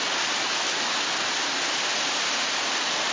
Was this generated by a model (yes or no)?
no